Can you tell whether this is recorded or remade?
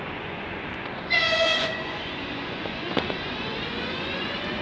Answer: remade